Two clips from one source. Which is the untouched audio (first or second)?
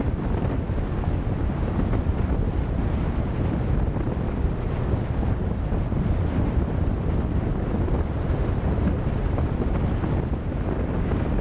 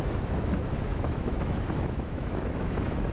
first